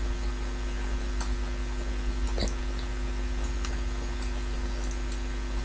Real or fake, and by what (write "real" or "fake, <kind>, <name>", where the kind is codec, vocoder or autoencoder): real